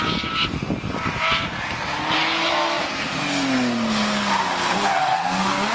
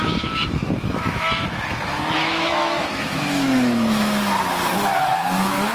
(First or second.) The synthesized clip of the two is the second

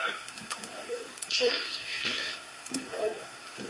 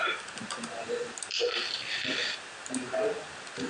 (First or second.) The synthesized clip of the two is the first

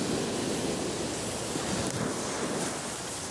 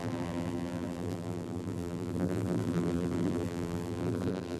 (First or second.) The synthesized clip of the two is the second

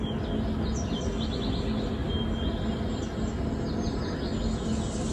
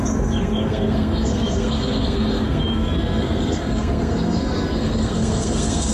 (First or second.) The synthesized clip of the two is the second